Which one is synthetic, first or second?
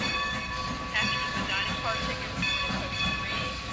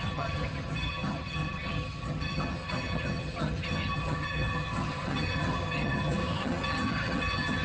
second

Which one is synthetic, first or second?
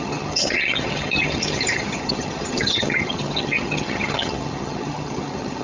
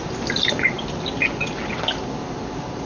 first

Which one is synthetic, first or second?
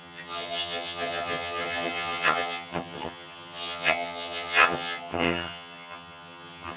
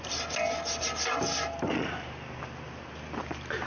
first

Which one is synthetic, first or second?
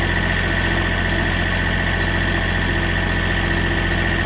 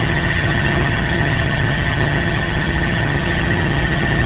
second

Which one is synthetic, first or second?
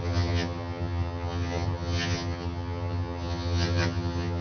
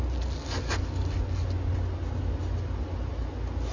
first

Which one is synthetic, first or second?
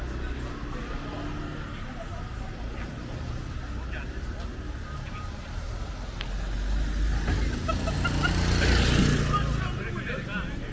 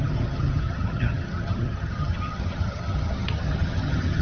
second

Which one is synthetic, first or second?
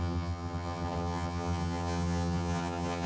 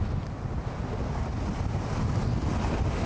first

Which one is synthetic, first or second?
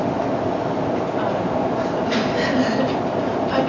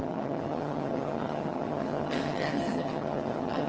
second